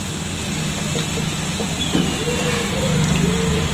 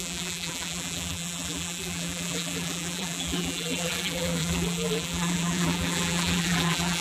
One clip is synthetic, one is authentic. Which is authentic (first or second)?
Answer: first